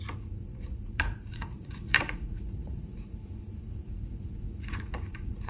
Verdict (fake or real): fake